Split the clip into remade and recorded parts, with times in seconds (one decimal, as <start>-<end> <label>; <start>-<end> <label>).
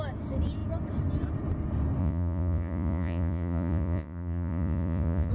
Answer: 0.0-2.0 recorded; 2.0-5.3 remade